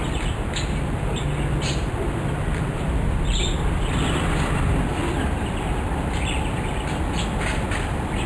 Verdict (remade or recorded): recorded